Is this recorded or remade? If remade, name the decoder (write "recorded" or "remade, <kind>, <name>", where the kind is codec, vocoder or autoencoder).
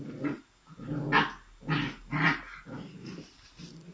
recorded